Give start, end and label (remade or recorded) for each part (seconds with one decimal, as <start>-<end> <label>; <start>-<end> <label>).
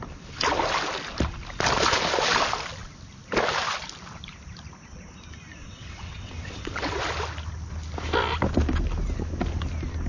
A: 0.0-5.6 recorded; 5.6-7.0 remade; 7.0-10.1 recorded